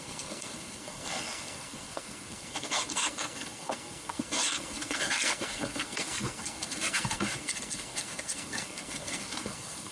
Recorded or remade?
remade